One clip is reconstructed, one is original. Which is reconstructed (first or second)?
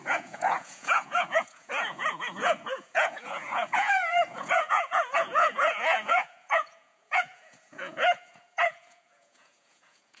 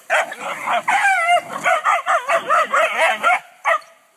first